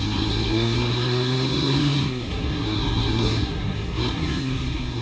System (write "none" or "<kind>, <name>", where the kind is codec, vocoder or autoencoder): codec, SNAC